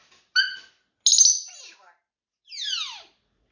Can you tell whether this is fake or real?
real